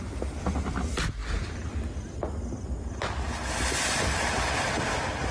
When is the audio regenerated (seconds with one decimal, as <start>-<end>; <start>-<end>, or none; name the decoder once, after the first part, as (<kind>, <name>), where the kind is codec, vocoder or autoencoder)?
none

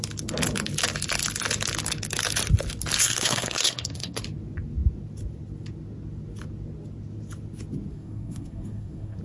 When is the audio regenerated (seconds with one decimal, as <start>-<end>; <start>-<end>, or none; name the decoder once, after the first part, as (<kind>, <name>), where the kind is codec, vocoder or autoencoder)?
3.0-4.2 (codec, SNAC); 7.9-9.2

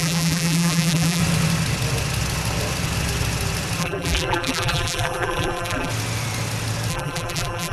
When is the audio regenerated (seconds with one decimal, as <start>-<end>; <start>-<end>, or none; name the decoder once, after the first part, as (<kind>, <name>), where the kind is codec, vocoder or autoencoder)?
0.0-1.2 (vocoder, BigVGAN v2); 3.8-5.9; 6.9-7.7

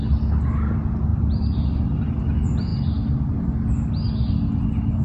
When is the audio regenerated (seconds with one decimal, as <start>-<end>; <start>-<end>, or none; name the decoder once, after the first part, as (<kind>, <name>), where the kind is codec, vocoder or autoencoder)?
none

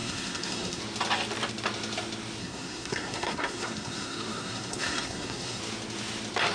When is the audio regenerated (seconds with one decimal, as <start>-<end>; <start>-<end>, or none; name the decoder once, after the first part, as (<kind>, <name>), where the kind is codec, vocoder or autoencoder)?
0.0-0.8 (codec, SNAC); 2.4-5.6

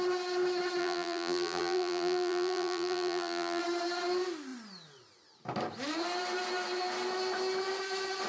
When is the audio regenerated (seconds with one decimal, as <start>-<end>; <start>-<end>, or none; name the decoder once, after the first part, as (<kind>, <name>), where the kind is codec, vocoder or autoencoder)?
0.8-3.6 (vocoder, BigVGAN v2)

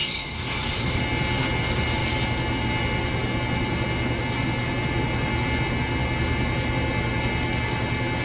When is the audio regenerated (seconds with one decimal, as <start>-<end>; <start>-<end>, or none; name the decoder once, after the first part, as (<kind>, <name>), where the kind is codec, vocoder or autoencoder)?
0.0-1.0 (codec, SNAC)